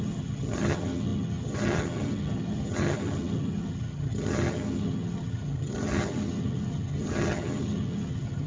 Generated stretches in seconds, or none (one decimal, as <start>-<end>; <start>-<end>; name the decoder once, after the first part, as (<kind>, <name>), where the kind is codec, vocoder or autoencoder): 0.0-8.5 (vocoder, HiFi-GAN)